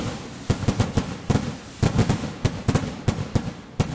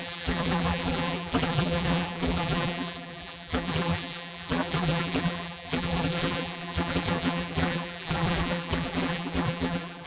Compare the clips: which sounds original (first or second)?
first